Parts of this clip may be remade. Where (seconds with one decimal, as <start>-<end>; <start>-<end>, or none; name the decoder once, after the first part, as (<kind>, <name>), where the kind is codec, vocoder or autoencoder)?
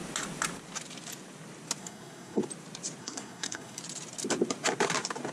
1.8-2.4 (codec, SNAC); 3.0-3.8